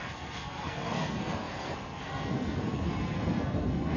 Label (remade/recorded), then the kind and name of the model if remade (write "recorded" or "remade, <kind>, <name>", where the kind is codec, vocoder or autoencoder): remade, codec, SNAC